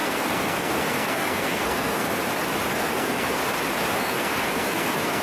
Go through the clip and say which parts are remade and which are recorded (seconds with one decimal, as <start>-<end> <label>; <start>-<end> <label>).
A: 0.0-2.2 remade; 2.2-2.7 recorded; 2.7-3.4 remade; 3.4-4.0 recorded; 4.0-5.2 remade